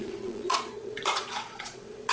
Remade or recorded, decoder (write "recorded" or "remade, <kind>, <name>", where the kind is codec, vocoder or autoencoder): remade, vocoder, Vocos